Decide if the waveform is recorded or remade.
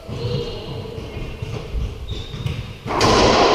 remade